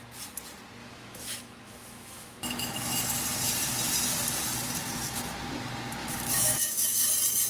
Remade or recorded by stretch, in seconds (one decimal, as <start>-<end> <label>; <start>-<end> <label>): 0.0-0.8 recorded; 0.8-3.0 remade; 3.0-6.0 recorded; 6.0-7.1 remade; 7.1-7.5 recorded